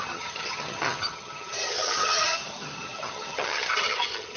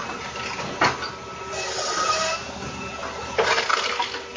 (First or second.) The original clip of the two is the second